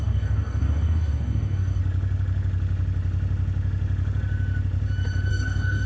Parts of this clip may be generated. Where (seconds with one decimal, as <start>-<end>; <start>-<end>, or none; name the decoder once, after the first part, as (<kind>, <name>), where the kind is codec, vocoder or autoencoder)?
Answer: 0.0-1.8 (codec, DAC); 5.3-5.9

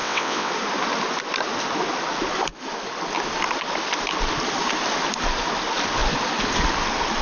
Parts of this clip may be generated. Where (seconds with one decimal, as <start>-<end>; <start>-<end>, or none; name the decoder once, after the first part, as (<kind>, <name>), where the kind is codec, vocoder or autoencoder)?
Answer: 0.0-0.5 (vocoder, WaveNeXt)

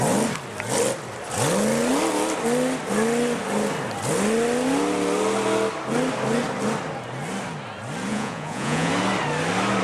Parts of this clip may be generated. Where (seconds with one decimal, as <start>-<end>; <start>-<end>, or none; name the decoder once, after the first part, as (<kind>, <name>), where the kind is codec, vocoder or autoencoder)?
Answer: 8.1-8.9 (vocoder, Vocos)